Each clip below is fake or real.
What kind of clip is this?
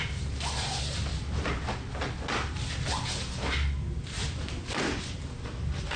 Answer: real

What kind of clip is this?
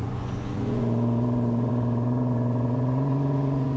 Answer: fake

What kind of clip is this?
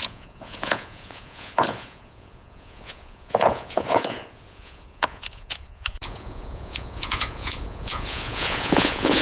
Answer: fake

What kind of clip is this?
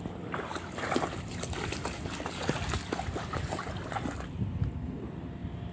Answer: real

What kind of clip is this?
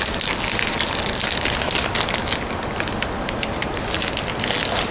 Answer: real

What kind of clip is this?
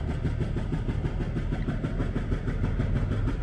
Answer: real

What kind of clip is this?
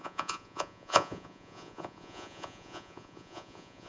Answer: fake